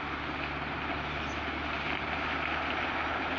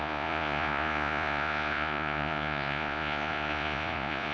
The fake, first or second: second